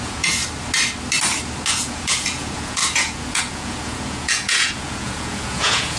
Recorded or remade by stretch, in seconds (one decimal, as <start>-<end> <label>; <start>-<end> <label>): 0.0-0.4 remade; 0.4-1.7 recorded; 1.7-6.0 remade